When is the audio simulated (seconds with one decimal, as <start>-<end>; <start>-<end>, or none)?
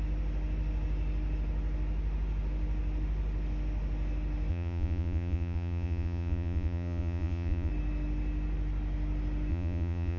4.5-7.7; 9.5-10.2